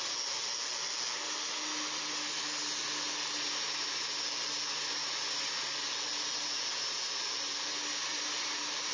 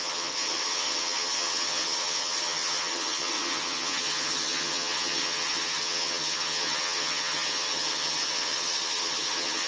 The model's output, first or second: second